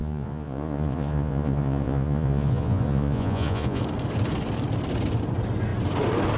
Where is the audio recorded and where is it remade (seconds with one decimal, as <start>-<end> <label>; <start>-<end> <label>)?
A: 0.0-3.8 remade; 3.8-6.4 recorded